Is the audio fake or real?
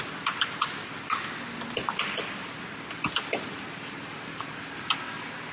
real